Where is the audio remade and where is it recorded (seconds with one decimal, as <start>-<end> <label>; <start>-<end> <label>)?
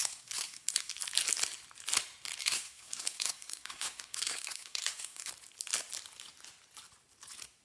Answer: 0.0-0.9 remade; 0.9-2.4 recorded; 2.4-5.3 remade; 5.3-7.6 recorded